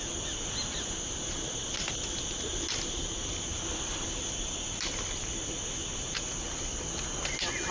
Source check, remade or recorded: recorded